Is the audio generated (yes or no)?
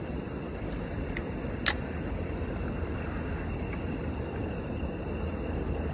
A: no